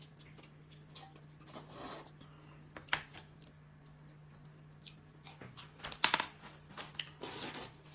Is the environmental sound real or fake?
real